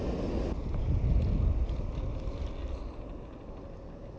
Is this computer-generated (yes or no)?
no